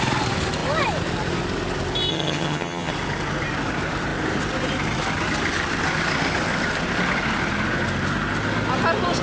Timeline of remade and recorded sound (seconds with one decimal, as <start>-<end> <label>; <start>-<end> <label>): 0.0-2.1 recorded; 2.1-2.9 remade; 2.9-9.2 recorded